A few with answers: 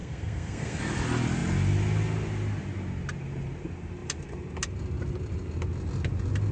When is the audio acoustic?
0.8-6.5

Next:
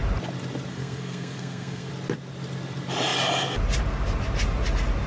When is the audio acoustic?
0.0-0.7; 1.9-5.1

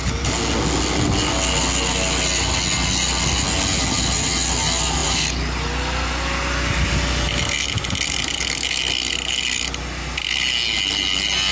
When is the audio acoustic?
0.0-11.5

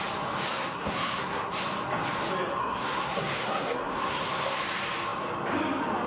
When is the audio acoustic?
0.0-0.5; 1.6-2.6; 4.6-6.1

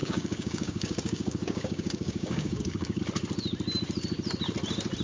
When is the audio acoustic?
3.0-5.0

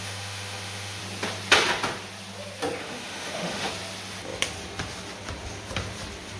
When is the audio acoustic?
1.0-2.8; 3.7-6.4

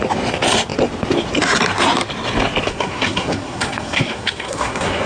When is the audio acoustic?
0.0-2.7

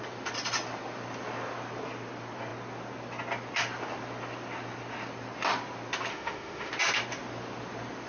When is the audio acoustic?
0.0-6.1; 6.7-8.1